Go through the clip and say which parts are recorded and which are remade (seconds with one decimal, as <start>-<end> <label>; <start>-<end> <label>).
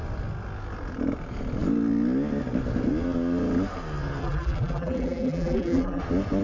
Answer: 0.0-4.2 recorded; 4.2-6.0 remade; 6.0-6.4 recorded